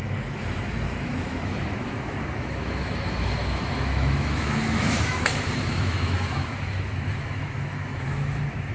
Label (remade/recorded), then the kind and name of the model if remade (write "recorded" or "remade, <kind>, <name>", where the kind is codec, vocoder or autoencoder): remade, autoencoder, DAC-VAE